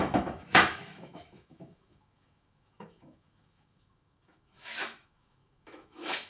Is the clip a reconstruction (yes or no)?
yes